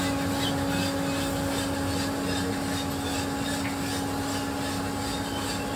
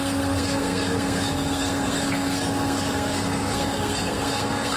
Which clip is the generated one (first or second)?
second